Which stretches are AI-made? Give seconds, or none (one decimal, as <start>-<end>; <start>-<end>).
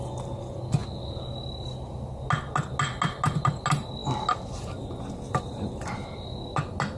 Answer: none